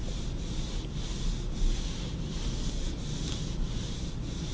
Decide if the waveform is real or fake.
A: real